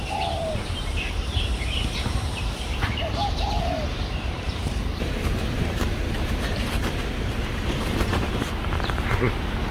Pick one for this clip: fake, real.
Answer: fake